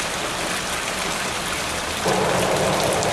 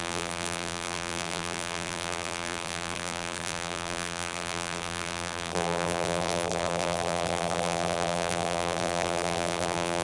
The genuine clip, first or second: first